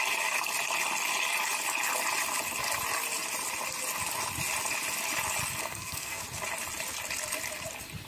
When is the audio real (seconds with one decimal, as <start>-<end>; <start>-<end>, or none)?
0.0-5.6; 6.2-8.1